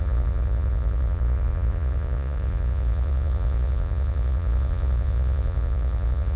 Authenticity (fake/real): fake